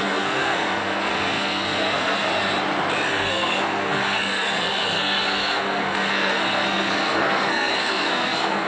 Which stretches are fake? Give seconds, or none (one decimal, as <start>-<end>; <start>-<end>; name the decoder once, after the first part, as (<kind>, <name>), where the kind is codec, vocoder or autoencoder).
0.0-2.3 (codec, SNAC); 3.1-8.7